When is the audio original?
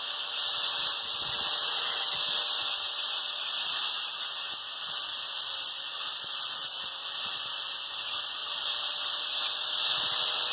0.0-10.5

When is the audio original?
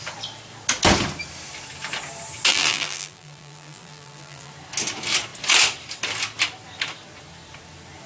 0.0-2.5; 4.5-8.1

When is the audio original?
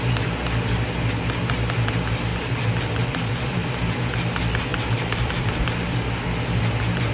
0.0-2.3; 3.7-4.7; 5.9-7.1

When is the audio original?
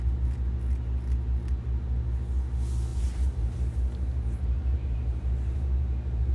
0.0-2.9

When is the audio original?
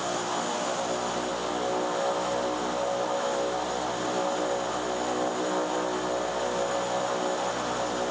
0.0-8.1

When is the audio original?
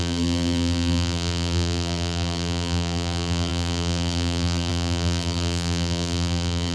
none